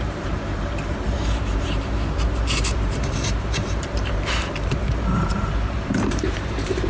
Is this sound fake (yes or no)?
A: yes